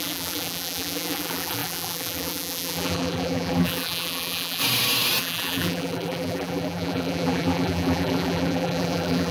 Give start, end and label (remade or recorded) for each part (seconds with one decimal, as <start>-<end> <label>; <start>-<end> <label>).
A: 0.0-4.6 remade; 4.6-5.2 recorded; 5.2-9.3 remade